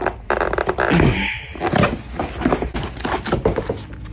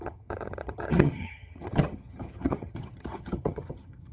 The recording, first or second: first